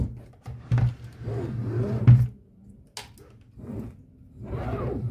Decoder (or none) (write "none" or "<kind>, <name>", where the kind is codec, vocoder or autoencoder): none